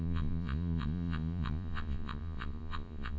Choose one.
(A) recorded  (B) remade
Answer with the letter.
B